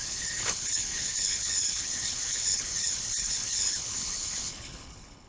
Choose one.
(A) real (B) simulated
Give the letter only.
B